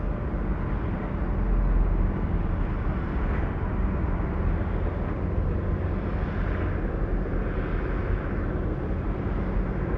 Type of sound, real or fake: real